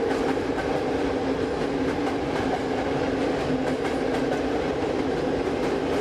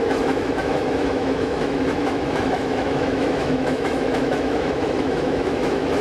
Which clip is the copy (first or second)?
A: second